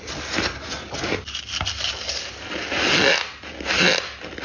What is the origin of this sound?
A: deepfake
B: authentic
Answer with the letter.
B